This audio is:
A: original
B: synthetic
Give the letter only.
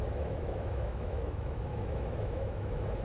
B